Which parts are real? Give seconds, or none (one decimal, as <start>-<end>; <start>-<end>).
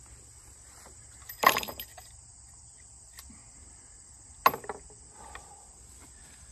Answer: 0.0-1.9; 2.8-6.5